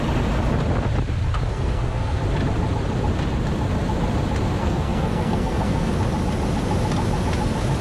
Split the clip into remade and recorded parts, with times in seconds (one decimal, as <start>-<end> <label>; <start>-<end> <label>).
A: 0.0-1.5 recorded; 1.5-2.2 remade; 2.2-4.6 recorded; 4.6-5.9 remade; 5.9-7.8 recorded